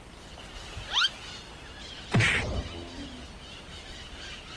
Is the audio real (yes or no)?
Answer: yes